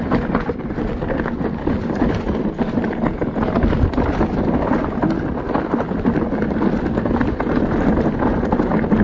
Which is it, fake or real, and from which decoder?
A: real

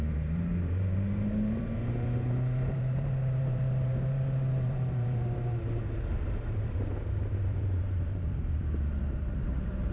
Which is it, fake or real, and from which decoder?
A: fake, vocoder, BigVGAN v2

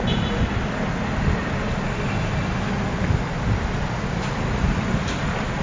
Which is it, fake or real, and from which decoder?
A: real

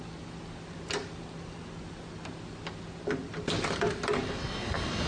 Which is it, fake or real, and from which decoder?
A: real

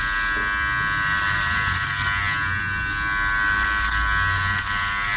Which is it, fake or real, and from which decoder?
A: real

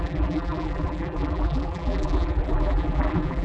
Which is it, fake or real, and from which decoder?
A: fake, vocoder, BigVGAN v2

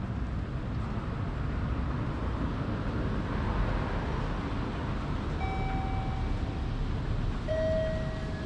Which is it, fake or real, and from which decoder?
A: real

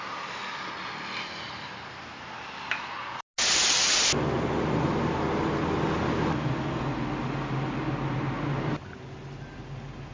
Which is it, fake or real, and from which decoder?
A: real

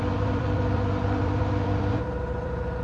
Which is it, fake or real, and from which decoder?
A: fake, vocoder, BigVGAN v2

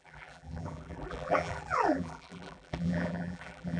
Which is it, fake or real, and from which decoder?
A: fake, vocoder, BigVGAN v2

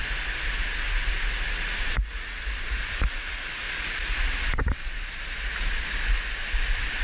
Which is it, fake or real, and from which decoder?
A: real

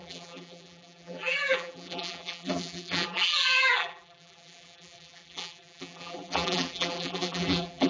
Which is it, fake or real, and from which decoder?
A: fake, vocoder, BigVGAN v2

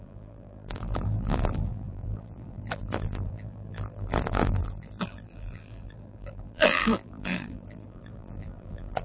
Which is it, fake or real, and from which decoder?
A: fake, vocoder, BigVGAN v2